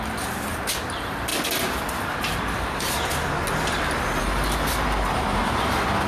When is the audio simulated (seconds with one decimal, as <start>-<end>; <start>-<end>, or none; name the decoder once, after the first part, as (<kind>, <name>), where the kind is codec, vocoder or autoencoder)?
none